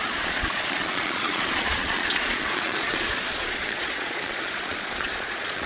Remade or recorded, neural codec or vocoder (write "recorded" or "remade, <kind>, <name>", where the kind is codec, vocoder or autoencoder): remade, vocoder, Vocos